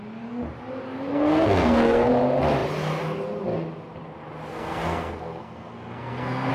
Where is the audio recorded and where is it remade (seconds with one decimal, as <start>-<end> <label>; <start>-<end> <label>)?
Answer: 0.0-1.1 recorded; 1.1-2.1 remade; 2.1-4.5 recorded; 4.5-6.5 remade

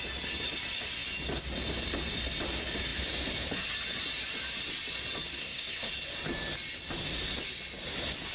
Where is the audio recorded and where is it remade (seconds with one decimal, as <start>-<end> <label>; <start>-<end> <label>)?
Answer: 0.0-5.4 recorded; 5.4-5.9 remade; 5.9-8.3 recorded

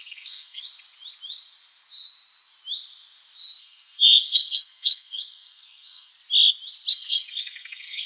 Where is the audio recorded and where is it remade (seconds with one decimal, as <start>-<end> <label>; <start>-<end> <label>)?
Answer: 0.0-0.6 remade; 0.6-3.6 recorded; 3.6-6.1 remade; 6.1-6.9 recorded; 6.9-8.1 remade

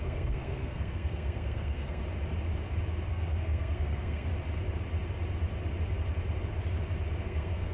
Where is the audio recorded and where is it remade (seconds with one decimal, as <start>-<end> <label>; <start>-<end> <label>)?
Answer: 0.0-2.0 remade; 2.0-3.1 recorded; 3.1-4.3 remade; 4.3-7.2 recorded; 7.2-7.7 remade

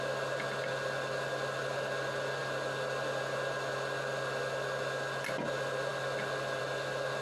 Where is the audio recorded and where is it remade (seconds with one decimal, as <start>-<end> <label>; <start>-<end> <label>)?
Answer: 0.0-7.2 recorded